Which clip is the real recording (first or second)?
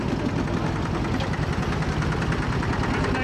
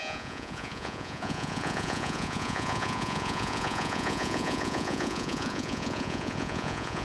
first